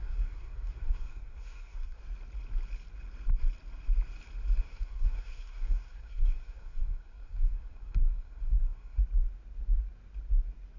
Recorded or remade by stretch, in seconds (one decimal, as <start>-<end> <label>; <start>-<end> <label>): 0.0-2.0 remade; 2.0-4.6 recorded; 4.6-9.0 remade; 9.0-10.8 recorded